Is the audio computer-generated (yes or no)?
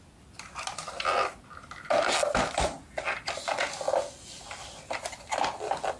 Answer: no